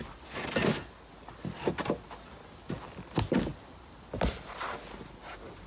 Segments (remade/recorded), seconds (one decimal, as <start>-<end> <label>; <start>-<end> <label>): 0.0-5.7 recorded